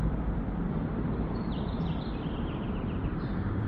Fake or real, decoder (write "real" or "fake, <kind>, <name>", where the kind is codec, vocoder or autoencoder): fake, vocoder, BigVGAN v2